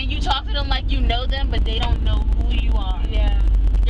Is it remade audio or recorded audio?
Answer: recorded